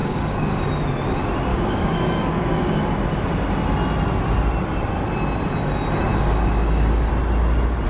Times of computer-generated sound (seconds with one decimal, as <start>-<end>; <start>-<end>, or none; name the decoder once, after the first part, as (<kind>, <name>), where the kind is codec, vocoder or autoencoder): 0.0-0.6 (codec, DAC); 1.5-2.8; 6.1-7.1